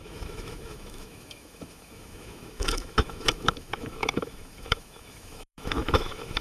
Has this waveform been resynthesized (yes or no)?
yes